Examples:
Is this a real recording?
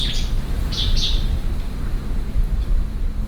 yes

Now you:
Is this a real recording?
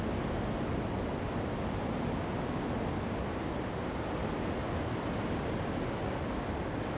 yes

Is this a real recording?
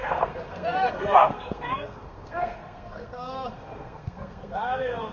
no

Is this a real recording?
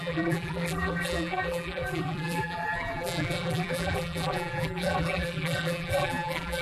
no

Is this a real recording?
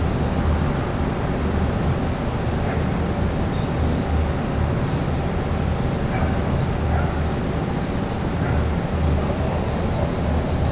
yes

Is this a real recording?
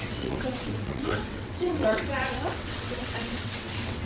no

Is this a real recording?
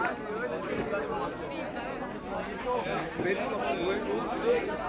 yes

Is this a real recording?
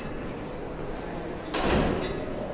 yes